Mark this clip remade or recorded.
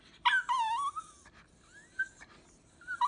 recorded